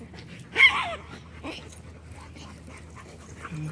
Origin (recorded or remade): recorded